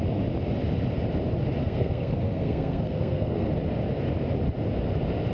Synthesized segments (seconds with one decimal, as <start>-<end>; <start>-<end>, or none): 1.6-3.5